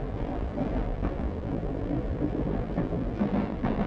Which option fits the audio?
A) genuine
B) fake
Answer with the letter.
B